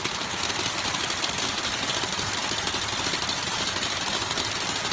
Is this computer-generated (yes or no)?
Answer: no